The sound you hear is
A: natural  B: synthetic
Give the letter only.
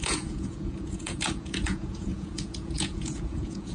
B